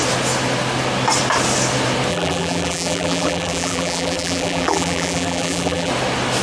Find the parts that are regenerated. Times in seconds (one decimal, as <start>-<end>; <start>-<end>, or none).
2.1-5.9